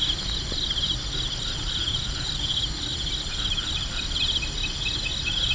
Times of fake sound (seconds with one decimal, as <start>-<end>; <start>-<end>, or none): none